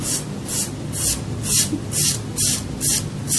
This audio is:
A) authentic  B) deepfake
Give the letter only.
A